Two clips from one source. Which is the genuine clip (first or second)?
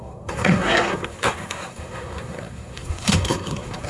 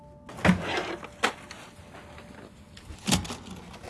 second